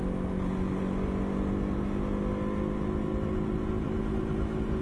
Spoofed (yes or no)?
no